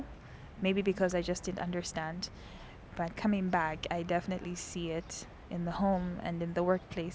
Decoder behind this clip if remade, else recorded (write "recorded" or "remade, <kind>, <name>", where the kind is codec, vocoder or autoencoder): recorded